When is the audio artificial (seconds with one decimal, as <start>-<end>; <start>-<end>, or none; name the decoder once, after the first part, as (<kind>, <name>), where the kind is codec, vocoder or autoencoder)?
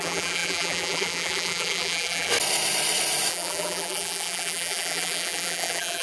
0.0-2.3 (vocoder, BigVGAN v2); 3.3-6.0